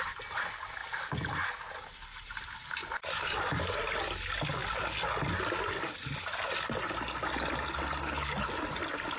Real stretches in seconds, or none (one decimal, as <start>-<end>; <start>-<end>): 0.0-2.8; 3.8-9.2